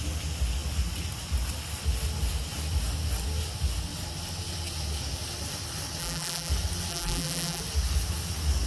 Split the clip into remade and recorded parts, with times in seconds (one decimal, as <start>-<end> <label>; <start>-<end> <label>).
0.0-6.0 recorded; 6.0-6.5 remade; 6.5-6.9 recorded; 6.9-7.6 remade; 7.6-8.7 recorded